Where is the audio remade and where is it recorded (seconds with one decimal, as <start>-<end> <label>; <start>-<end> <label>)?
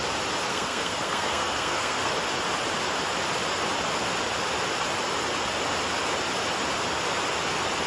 0.0-0.5 recorded; 0.5-2.1 remade; 2.1-7.9 recorded